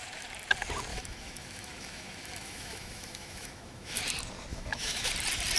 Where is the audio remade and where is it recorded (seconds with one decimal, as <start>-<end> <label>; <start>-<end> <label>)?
0.0-0.9 recorded; 0.9-4.0 remade; 4.0-4.5 recorded; 4.5-5.1 remade; 5.1-5.6 recorded